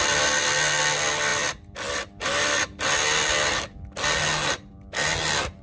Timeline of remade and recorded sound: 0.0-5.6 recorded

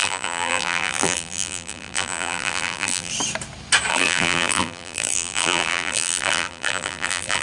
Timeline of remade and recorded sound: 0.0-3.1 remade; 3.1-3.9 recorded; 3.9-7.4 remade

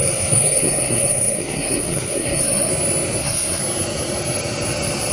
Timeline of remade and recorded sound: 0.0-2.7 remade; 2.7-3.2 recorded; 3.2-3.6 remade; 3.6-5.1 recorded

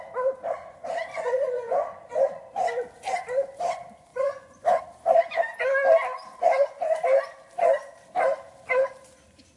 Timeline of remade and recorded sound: 0.0-1.1 recorded; 1.1-2.5 remade; 2.5-4.1 recorded; 4.1-4.8 remade; 4.8-9.6 recorded